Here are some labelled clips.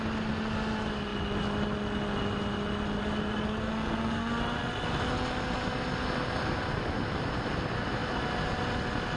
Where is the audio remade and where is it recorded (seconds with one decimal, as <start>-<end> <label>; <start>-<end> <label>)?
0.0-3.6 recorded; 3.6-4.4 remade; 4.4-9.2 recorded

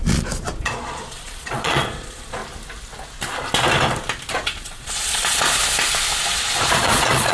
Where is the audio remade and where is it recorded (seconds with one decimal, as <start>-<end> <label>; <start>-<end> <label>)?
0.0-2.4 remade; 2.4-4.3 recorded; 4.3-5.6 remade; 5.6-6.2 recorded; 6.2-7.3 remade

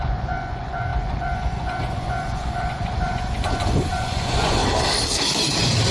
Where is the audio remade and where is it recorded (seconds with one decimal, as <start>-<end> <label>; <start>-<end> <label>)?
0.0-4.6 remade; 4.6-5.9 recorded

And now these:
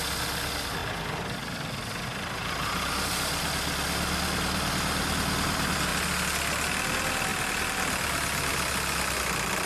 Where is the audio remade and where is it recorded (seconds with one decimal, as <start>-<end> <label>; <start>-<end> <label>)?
0.0-7.3 recorded; 7.3-8.5 remade; 8.5-9.7 recorded

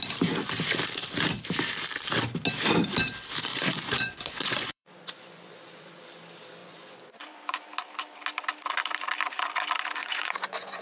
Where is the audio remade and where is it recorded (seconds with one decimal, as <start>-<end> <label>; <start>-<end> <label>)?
0.0-3.5 recorded; 3.5-6.0 remade; 6.0-6.6 recorded; 6.6-7.7 remade; 7.7-10.0 recorded; 10.0-10.8 remade

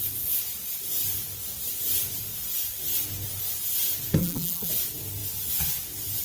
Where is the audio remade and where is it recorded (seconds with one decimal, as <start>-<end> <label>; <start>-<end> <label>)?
0.0-4.2 recorded; 4.2-4.7 remade; 4.7-6.2 recorded